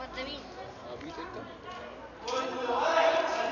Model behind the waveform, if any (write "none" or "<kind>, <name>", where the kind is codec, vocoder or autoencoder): none